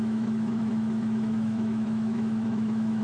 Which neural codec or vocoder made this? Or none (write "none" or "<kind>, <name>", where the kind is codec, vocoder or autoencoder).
autoencoder, DAC-VAE